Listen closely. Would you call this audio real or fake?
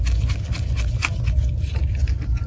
real